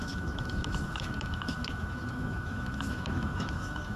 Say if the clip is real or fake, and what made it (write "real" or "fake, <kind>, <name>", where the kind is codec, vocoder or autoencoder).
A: fake, autoencoder, DAC-VAE